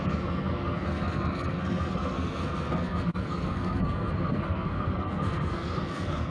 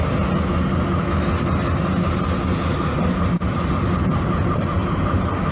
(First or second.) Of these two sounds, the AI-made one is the first